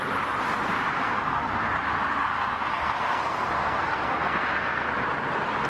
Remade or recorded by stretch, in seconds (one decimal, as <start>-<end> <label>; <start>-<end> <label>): 0.0-0.9 recorded; 0.9-1.5 remade; 1.5-2.2 recorded; 2.2-4.9 remade; 4.9-5.7 recorded